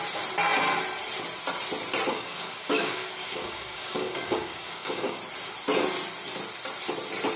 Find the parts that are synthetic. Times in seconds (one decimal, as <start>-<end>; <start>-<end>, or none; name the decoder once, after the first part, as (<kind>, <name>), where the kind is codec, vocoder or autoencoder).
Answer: 2.1-5.2 (codec, DAC)